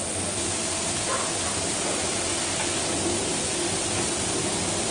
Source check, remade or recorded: recorded